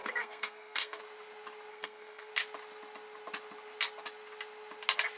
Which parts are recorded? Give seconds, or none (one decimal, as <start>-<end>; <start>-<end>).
1.0-1.7; 2.3-5.2